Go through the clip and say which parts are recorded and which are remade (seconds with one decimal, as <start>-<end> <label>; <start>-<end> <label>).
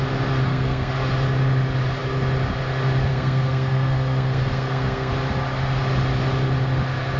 0.0-0.4 recorded; 0.4-0.9 remade; 0.9-3.1 recorded; 3.1-5.1 remade; 5.1-7.2 recorded